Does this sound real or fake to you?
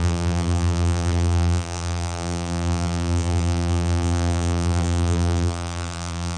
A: fake